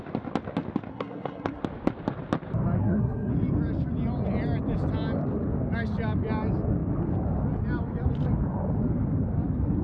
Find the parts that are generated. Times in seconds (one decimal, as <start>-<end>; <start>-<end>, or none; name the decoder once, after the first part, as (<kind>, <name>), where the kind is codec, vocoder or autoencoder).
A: 0.9-1.6 (codec, SNAC); 2.8-3.3